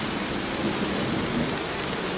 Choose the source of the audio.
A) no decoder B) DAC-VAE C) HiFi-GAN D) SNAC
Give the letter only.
A